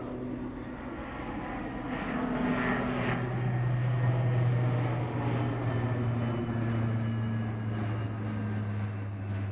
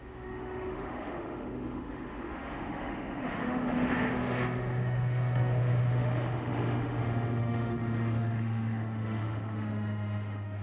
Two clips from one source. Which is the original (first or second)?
first